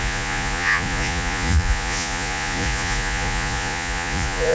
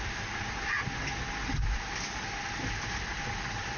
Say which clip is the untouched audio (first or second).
second